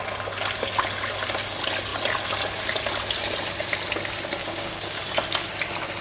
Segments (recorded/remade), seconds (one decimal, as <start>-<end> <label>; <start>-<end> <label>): 0.0-4.4 recorded; 4.4-5.0 remade; 5.0-6.0 recorded